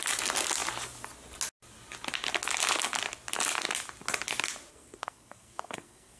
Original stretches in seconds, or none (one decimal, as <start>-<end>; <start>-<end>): 0.0-4.7